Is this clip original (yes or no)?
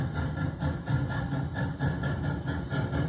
yes